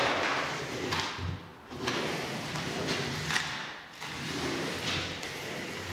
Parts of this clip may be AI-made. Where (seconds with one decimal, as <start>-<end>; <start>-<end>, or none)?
0.0-0.6